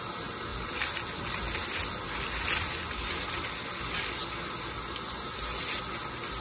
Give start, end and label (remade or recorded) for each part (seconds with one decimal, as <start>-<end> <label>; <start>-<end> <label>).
0.0-6.4 recorded